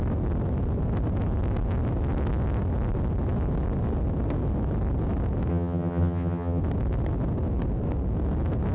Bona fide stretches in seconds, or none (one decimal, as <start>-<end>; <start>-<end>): 0.0-5.5; 6.6-8.7